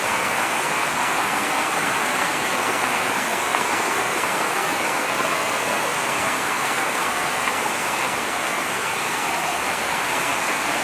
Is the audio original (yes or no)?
no